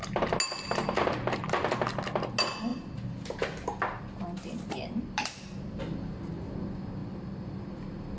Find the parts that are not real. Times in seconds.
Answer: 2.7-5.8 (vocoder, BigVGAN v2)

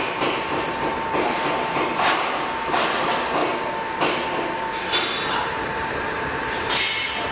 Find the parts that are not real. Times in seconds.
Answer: 0.0-3.4 (vocoder, BigVGAN v2); 5.3-7.3

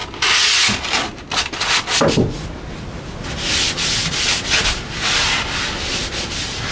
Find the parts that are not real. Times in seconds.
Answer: none

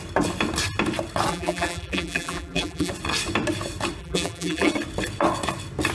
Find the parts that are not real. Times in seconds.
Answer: 1.3-2.9 (vocoder, BigVGAN v2); 4.0-4.7

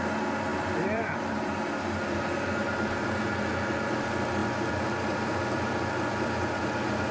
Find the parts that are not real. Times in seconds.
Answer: 0.5-1.9 (vocoder, BigVGAN v2); 4.4-6.6